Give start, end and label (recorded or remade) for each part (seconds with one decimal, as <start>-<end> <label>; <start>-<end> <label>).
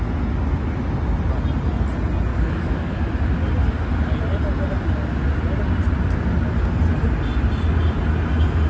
0.0-2.3 recorded; 2.3-3.1 remade; 3.1-8.7 recorded